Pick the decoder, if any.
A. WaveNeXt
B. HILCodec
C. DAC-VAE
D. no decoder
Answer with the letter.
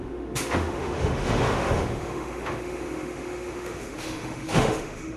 C